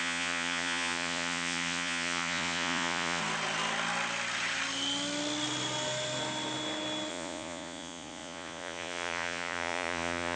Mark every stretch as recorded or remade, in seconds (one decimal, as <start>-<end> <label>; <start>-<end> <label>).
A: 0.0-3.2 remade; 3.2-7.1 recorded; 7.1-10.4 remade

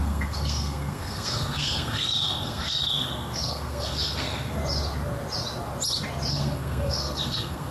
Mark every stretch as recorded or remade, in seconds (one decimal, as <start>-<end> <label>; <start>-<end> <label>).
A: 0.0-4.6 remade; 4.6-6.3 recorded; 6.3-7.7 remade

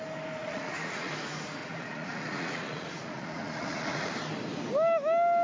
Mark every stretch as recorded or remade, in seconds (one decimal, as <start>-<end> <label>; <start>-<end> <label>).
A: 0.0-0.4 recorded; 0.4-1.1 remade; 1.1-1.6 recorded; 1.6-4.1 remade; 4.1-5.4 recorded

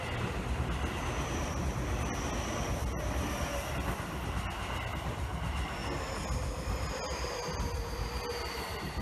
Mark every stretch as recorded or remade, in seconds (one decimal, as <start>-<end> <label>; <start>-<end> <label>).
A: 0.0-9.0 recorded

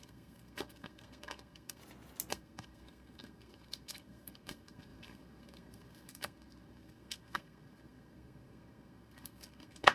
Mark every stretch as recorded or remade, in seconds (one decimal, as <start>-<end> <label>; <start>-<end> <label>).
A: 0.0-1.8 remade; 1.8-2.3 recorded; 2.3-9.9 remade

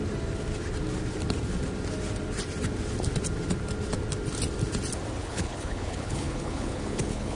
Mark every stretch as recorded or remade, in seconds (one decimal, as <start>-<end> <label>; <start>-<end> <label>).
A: 0.0-5.2 recorded; 5.2-7.4 remade

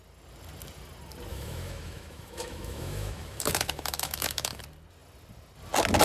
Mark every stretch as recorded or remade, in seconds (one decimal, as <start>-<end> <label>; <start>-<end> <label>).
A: 0.0-1.3 recorded; 1.3-4.6 remade; 4.6-6.0 recorded